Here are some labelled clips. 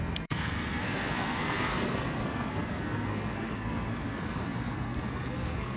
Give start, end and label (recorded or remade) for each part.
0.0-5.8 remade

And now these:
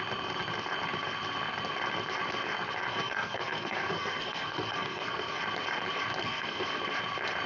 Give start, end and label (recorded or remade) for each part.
0.0-2.9 recorded; 2.9-5.4 remade; 5.4-6.2 recorded; 6.2-6.8 remade; 6.8-7.5 recorded

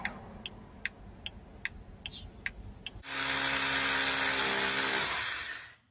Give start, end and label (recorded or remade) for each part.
0.0-5.9 recorded

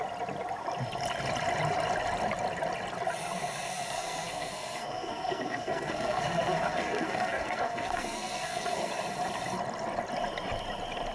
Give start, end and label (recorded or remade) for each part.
0.0-3.7 recorded; 3.7-8.9 remade; 8.9-11.1 recorded

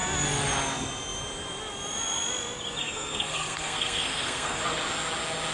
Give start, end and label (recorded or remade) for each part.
0.0-2.8 recorded; 2.8-4.6 remade; 4.6-5.5 recorded

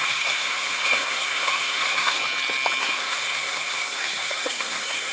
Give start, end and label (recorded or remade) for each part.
0.0-2.2 remade; 2.2-2.8 recorded; 2.8-5.1 remade

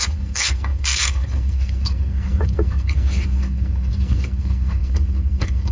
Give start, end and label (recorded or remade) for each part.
0.0-5.7 remade

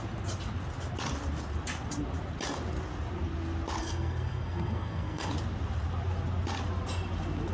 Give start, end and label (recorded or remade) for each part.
0.0-3.8 recorded; 3.8-5.3 remade; 5.3-7.5 recorded